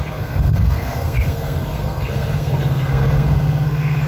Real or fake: fake